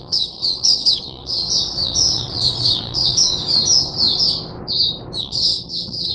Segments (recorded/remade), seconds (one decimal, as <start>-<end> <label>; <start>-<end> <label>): 0.0-3.3 remade; 3.3-5.2 recorded; 5.2-6.1 remade